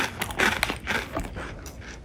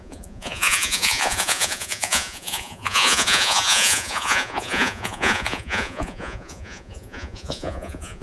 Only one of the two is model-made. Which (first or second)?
second